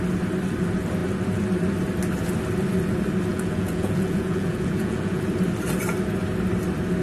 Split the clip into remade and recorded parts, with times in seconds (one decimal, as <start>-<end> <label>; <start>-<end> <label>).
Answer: 0.0-3.3 recorded; 3.3-5.3 remade; 5.3-7.0 recorded